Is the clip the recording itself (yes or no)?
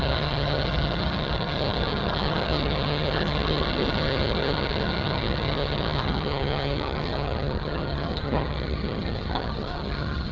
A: no